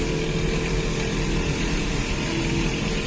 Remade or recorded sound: recorded